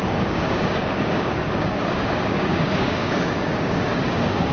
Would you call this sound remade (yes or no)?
yes